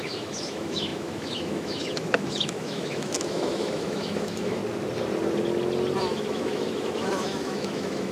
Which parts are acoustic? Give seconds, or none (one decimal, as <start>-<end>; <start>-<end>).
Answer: 4.6-6.0